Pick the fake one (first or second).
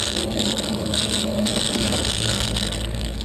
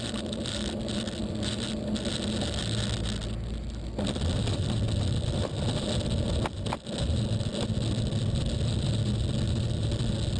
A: first